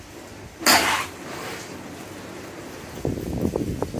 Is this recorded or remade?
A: recorded